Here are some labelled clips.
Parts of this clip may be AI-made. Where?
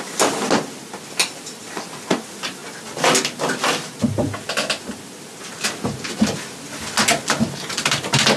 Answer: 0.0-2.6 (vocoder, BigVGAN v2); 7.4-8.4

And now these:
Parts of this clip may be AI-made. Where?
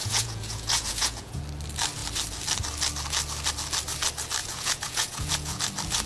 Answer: 0.0-1.4 (vocoder, Vocos); 4.4-5.6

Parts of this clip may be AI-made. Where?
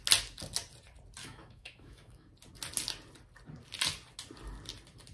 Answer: 1.2-2.3 (autoencoder, DAC-VAE)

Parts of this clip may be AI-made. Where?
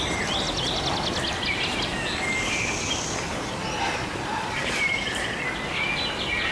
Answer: none